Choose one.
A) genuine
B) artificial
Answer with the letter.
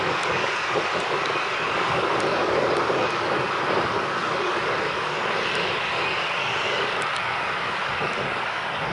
B